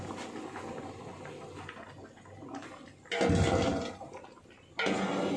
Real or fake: real